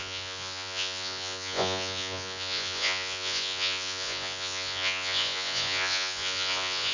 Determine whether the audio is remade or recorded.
remade